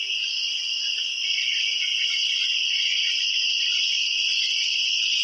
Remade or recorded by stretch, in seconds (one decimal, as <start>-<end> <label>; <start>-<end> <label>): 0.0-5.2 recorded